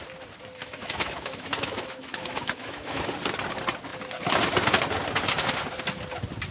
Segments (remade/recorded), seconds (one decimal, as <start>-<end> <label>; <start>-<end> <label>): 0.0-0.6 recorded; 0.6-3.0 remade; 3.0-6.5 recorded